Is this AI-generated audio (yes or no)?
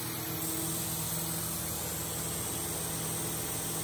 no